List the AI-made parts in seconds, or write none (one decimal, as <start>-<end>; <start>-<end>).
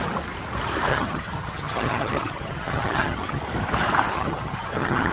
0.9-3.4; 4.1-5.1